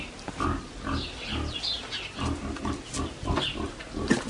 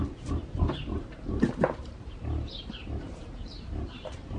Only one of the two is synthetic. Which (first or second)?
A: second